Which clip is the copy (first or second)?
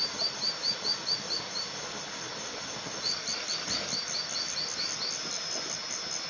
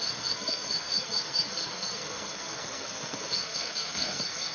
second